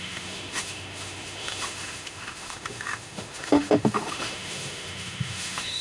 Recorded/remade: remade